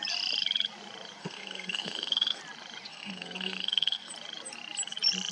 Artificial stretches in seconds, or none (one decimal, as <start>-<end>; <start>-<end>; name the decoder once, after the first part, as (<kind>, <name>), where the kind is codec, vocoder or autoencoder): 1.2-2.4 (codec, SNAC); 2.9-4.1